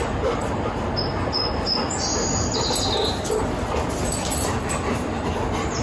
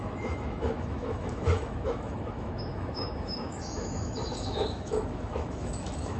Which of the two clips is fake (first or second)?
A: second